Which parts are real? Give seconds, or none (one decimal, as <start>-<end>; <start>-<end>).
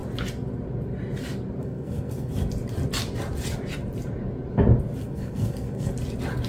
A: 0.0-1.6; 2.3-5.0; 5.9-6.5